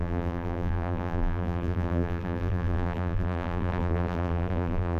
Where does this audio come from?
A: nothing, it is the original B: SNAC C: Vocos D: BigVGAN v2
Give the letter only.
D